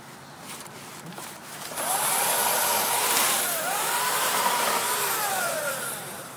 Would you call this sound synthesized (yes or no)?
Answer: yes